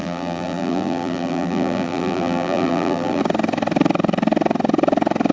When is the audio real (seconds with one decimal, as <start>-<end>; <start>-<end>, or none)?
3.2-5.3